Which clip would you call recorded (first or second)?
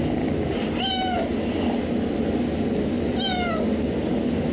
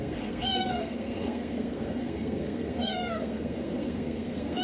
first